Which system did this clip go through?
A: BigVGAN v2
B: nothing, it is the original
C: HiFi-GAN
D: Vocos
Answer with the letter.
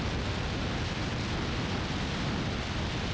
B